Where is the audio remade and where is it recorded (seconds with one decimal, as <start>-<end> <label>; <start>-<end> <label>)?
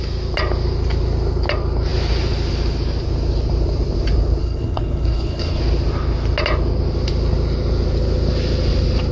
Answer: 0.0-4.4 recorded; 4.4-5.6 remade; 5.6-9.1 recorded